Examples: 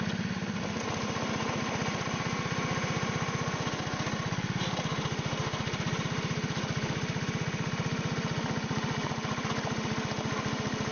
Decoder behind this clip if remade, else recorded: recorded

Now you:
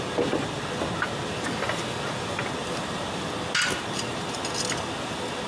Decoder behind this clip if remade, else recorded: recorded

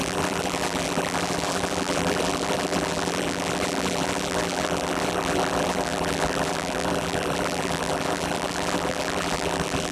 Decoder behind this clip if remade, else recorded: remade, vocoder, BigVGAN v2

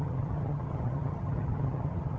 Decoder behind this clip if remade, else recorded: remade, vocoder, HiFi-GAN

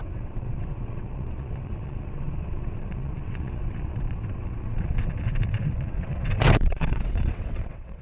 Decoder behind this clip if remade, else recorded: remade, vocoder, WaveNeXt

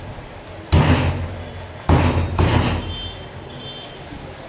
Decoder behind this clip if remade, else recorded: recorded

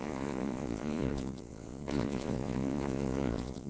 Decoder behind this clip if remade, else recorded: remade, vocoder, Vocos